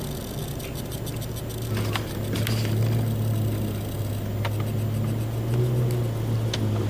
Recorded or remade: recorded